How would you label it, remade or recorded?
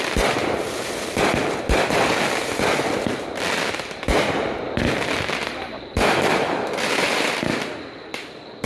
remade